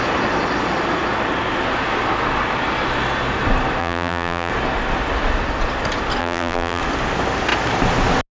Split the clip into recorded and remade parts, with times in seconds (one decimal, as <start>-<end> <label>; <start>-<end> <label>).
0.0-3.8 recorded; 3.8-4.5 remade; 4.5-6.2 recorded; 6.2-6.8 remade; 6.8-8.3 recorded